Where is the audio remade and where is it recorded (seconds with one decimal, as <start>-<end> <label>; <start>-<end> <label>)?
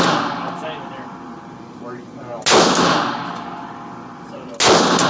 0.0-5.1 recorded